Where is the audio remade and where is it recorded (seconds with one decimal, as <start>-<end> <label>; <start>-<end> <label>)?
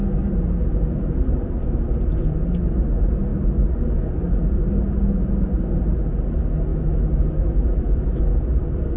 0.0-6.7 recorded; 6.7-8.2 remade; 8.2-9.0 recorded